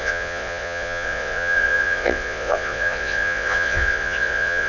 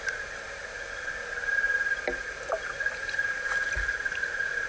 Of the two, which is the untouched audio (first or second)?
second